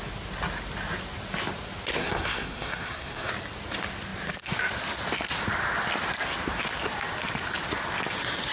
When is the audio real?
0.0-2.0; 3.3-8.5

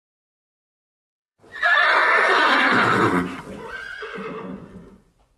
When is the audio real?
none

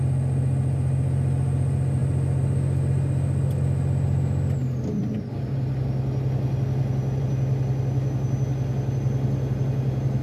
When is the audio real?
0.0-10.2

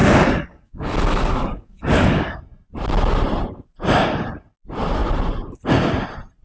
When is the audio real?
2.4-6.4

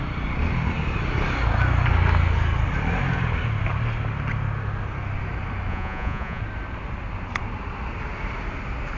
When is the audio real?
0.0-5.7; 6.4-9.0

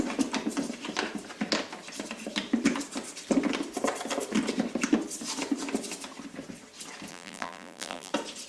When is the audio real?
0.0-7.1; 8.1-8.5

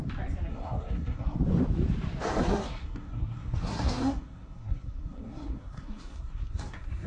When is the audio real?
0.0-0.5; 1.4-2.4